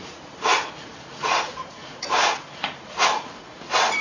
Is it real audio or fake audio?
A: fake